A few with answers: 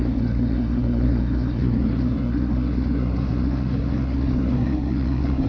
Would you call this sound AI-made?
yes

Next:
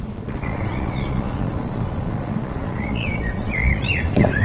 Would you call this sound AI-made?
yes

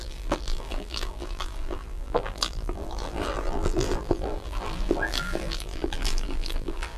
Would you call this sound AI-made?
yes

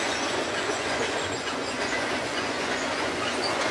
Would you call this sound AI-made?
yes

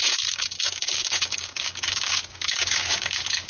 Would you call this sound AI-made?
yes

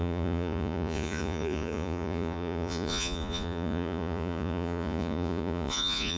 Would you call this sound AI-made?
yes